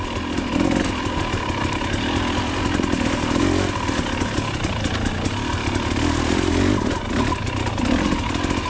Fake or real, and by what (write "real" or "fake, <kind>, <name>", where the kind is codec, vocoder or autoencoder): real